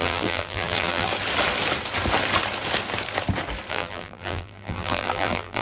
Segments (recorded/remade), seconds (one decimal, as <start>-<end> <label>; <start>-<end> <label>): 0.0-1.1 remade; 1.1-3.7 recorded; 3.7-5.6 remade